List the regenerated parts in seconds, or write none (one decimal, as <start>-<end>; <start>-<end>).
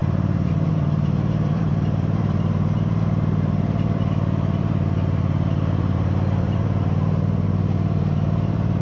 0.0-8.8